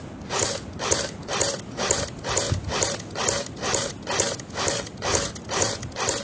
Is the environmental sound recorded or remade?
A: recorded